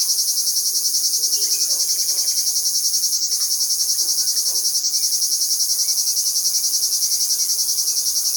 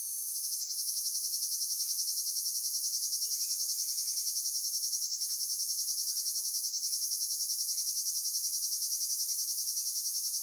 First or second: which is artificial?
second